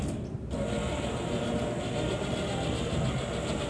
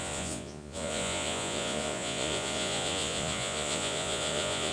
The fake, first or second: second